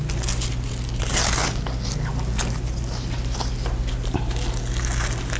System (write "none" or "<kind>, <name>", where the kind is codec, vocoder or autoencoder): none